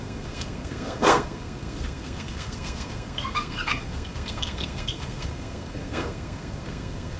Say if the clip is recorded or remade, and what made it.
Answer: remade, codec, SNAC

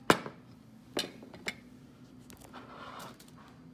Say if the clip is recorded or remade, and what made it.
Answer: recorded